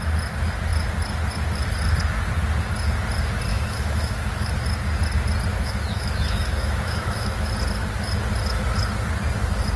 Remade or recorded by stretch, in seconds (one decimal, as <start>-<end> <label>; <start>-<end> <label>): 0.0-3.5 recorded; 3.5-4.5 remade; 4.5-5.5 recorded; 5.5-7.5 remade; 7.5-9.8 recorded